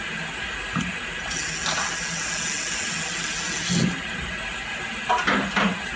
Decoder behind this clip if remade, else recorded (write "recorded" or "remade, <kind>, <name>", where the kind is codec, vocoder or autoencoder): recorded